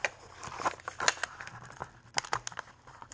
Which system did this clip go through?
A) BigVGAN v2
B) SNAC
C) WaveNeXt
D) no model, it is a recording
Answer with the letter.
D